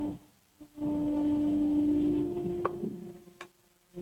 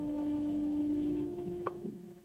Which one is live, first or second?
first